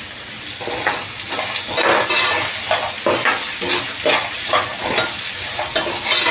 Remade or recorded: recorded